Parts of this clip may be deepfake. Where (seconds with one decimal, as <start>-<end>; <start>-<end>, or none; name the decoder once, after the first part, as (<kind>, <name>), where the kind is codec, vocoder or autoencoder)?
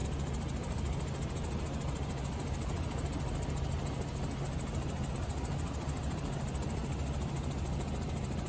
none